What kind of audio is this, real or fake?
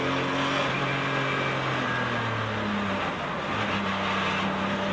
real